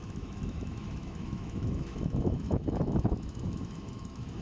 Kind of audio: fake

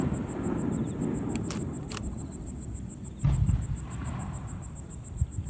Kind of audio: real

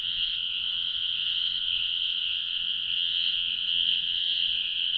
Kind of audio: fake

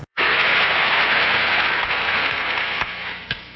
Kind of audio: fake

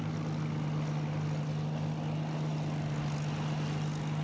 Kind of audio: real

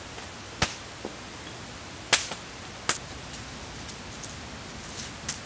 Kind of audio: real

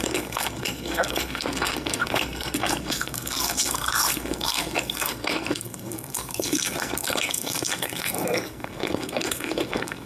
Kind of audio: fake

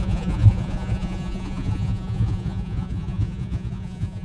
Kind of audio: fake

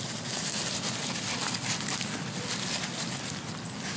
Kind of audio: real